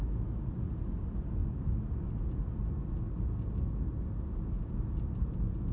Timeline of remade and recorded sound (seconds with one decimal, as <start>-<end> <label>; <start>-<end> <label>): 0.0-5.7 recorded